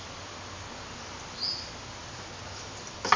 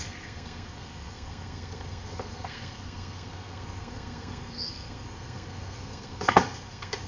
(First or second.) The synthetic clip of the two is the second